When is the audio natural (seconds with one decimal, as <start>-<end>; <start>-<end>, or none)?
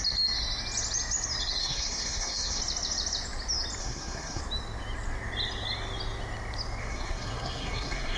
0.0-1.6; 2.6-3.8; 4.4-6.8